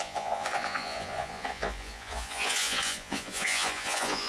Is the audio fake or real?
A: fake